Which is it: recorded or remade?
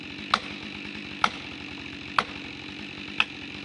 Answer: recorded